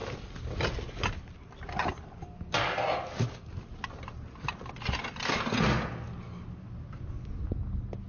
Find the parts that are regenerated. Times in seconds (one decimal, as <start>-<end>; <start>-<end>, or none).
none